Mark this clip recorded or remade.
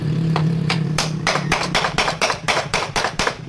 remade